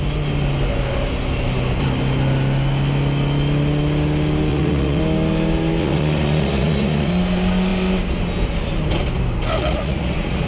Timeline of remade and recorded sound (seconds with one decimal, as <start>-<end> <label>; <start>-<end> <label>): 0.0-4.5 recorded; 4.5-5.0 remade; 5.0-5.8 recorded; 5.8-7.1 remade; 7.1-9.6 recorded; 9.6-10.5 remade